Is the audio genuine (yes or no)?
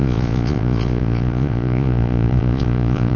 no